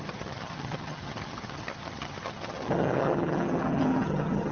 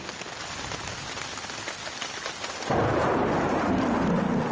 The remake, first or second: first